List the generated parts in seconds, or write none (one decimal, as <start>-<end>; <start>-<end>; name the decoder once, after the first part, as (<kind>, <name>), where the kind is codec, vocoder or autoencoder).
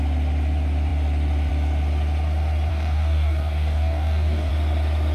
2.7-4.5 (codec, DAC)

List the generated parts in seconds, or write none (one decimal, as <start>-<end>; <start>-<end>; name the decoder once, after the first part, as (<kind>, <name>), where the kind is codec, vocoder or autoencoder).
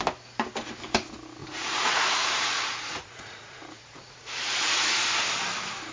1.4-4.7 (vocoder, Vocos)